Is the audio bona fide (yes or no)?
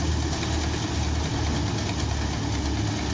yes